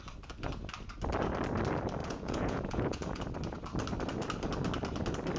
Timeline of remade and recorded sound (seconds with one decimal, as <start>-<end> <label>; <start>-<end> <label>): 0.0-2.0 recorded; 2.0-3.2 remade; 3.2-5.4 recorded